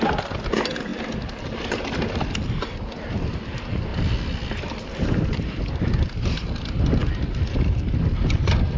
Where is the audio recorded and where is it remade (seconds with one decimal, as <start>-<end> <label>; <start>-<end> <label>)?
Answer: 0.0-8.8 recorded